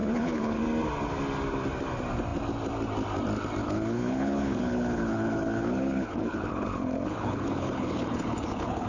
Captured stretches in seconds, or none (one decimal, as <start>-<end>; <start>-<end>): 0.6-3.6